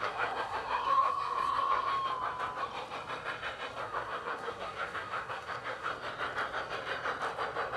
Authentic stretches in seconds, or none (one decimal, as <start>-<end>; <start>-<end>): 1.9-3.8; 5.9-7.8